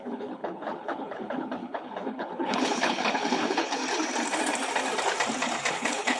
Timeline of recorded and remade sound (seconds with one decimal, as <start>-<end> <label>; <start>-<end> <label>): 0.0-3.8 remade; 3.8-5.7 recorded; 5.7-6.2 remade